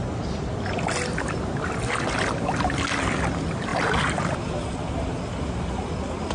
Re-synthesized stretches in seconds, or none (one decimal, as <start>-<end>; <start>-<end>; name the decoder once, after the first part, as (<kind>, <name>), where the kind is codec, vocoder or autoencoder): none